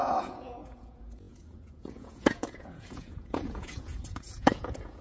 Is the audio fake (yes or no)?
yes